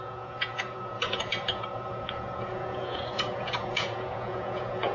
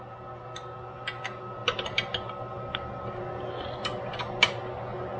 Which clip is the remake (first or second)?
first